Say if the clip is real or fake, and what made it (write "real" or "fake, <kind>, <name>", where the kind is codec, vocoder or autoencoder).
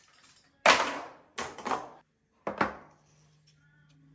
real